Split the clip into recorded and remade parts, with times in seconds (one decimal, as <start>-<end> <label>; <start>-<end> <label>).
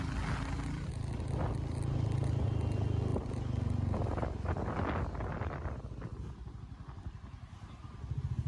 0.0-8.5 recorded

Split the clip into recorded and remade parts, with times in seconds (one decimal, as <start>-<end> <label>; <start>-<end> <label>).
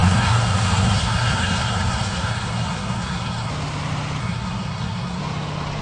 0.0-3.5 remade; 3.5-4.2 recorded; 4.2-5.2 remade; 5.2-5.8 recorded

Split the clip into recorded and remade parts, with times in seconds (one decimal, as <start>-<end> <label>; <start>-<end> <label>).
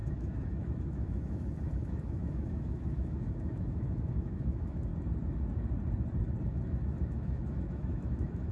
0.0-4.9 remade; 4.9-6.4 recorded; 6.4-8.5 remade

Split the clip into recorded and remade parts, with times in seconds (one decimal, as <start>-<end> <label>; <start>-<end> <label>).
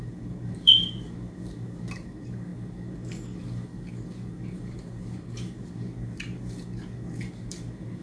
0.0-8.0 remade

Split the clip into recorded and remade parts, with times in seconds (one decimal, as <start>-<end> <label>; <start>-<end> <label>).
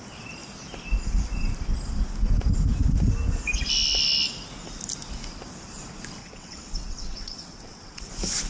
0.0-6.2 recorded; 6.2-8.1 remade; 8.1-8.5 recorded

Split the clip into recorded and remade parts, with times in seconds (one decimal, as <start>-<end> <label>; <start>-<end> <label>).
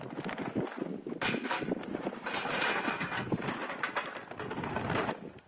0.0-2.7 recorded; 2.7-3.3 remade; 3.3-5.5 recorded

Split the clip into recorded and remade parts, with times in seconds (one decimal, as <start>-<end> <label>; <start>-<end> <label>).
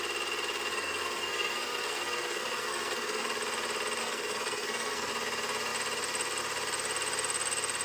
0.0-0.7 recorded; 0.7-3.3 remade; 3.3-4.0 recorded; 4.0-5.1 remade; 5.1-7.8 recorded